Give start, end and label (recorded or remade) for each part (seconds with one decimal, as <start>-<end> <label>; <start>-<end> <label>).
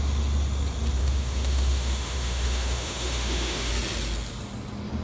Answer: 0.0-1.0 recorded; 1.0-3.7 remade; 3.7-5.0 recorded